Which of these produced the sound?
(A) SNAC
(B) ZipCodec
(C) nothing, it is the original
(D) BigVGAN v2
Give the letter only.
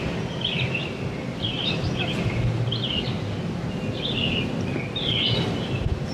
C